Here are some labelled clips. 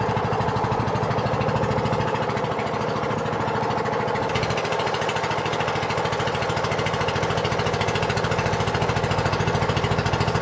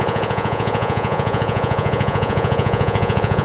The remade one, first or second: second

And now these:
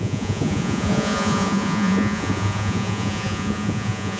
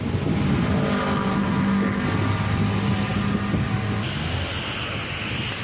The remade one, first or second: first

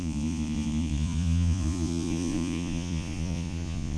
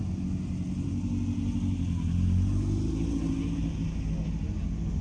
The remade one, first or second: first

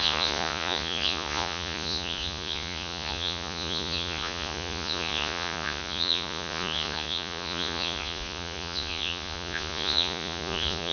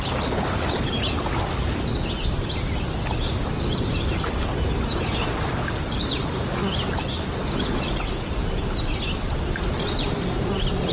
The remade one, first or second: first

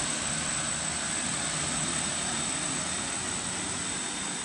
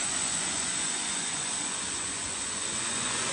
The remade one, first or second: second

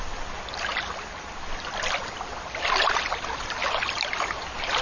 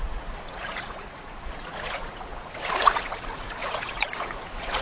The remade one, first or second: second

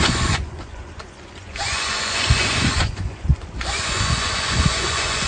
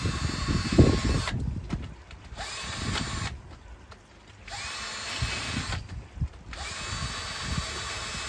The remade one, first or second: first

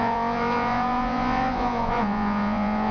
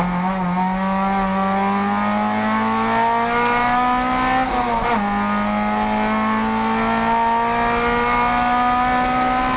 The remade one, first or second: first